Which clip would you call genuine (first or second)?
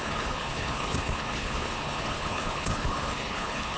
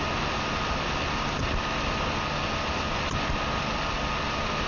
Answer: second